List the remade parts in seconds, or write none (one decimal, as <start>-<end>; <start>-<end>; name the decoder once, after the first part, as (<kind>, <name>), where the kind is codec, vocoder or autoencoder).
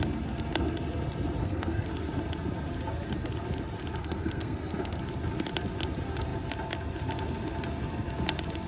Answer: 1.4-1.9 (codec, SNAC); 4.0-5.0